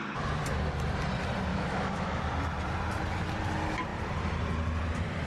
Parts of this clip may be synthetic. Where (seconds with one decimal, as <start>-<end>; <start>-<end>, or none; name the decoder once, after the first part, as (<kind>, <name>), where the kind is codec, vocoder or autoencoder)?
1.5-2.2 (autoencoder, DAC-VAE)